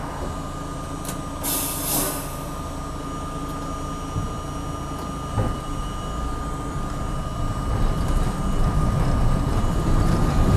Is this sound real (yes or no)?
yes